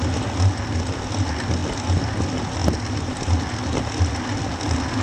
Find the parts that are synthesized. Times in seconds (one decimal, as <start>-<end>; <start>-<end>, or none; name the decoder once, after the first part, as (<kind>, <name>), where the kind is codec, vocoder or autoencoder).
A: none